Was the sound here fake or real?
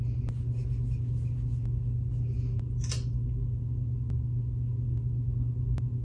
real